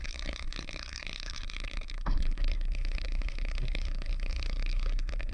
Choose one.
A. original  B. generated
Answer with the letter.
B